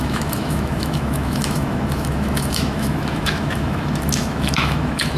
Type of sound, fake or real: fake